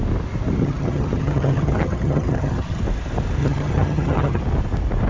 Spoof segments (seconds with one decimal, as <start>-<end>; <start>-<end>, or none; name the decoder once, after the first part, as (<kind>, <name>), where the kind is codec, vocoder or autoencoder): 0.6-2.8 (vocoder, HiFi-GAN); 3.4-4.4